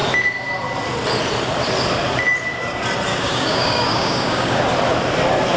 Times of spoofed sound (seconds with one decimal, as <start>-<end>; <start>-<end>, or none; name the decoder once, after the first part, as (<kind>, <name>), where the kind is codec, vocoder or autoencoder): 3.1-4.6 (codec, DAC)